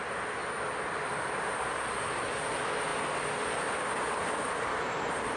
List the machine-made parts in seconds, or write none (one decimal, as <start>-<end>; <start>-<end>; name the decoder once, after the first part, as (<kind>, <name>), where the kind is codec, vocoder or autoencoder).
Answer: none

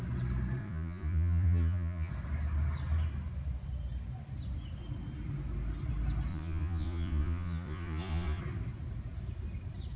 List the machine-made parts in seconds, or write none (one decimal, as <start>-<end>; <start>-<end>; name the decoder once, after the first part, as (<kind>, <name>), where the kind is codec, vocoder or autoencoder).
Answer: 0.6-2.1 (vocoder, Vocos); 6.3-8.4

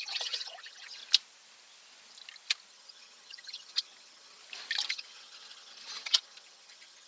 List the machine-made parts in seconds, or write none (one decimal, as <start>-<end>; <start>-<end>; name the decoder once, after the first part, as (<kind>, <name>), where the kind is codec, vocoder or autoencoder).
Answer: 0.0-1.0 (vocoder, HiFi-GAN); 2.7-4.4; 4.9-7.1